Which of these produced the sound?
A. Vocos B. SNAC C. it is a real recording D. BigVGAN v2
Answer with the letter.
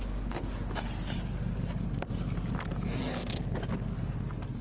C